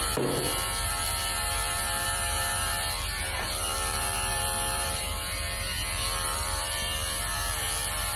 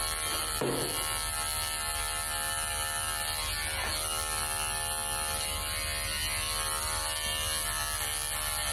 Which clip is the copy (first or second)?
first